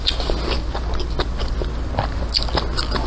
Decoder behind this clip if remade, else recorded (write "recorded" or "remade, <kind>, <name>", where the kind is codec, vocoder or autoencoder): recorded